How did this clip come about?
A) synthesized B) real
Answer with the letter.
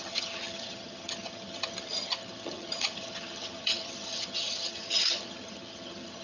A